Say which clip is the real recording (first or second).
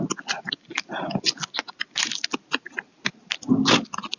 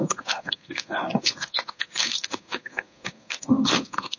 first